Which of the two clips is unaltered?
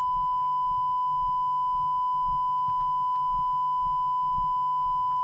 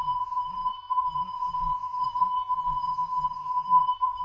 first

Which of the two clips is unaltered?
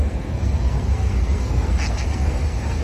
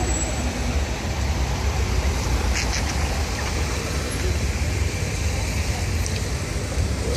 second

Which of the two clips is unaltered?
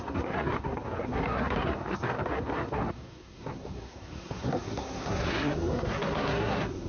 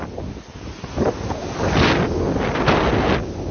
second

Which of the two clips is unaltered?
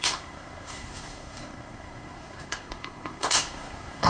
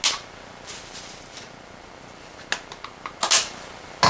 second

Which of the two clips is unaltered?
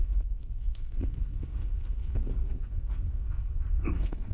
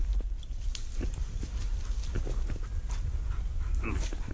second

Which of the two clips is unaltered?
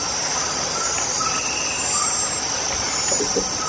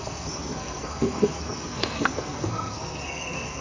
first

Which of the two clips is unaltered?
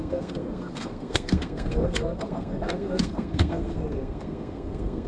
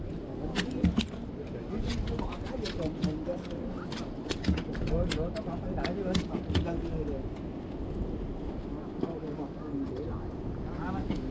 second